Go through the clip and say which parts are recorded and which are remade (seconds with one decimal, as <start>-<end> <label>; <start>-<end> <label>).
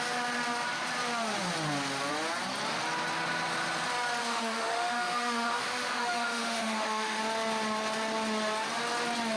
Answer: 0.0-4.2 recorded; 4.2-7.2 remade; 7.2-9.4 recorded